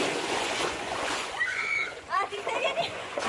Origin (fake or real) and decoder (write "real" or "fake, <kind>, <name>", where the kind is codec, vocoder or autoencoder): fake, vocoder, Vocos